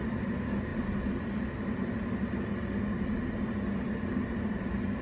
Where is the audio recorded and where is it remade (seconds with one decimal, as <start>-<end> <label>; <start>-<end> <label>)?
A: 0.0-5.0 recorded